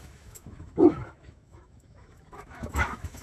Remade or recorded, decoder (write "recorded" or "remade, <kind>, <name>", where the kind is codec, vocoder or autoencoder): remade, autoencoder, DAC-VAE